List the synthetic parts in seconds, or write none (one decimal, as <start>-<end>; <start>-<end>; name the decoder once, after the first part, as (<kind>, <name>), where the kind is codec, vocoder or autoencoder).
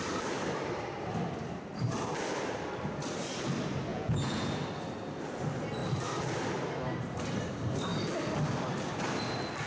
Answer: 3.9-4.5 (vocoder, Vocos)